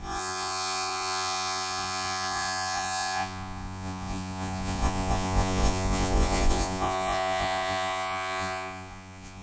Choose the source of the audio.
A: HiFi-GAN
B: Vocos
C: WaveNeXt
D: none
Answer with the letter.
B